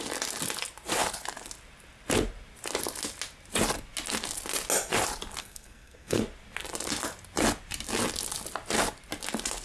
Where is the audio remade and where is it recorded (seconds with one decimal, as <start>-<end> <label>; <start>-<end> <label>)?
0.0-5.4 recorded; 5.4-6.2 remade; 6.2-9.6 recorded